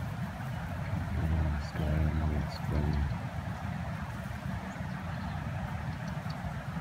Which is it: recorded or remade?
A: recorded